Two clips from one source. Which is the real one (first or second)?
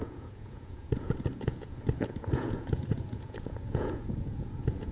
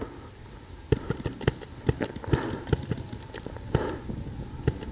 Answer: second